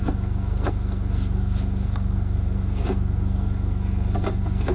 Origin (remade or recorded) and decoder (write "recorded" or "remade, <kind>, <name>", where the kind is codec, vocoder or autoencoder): remade, codec, SNAC